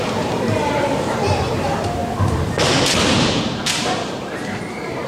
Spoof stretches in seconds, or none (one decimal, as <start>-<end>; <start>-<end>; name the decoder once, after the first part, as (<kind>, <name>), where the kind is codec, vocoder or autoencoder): 0.0-2.0 (vocoder, BigVGAN v2); 2.9-5.1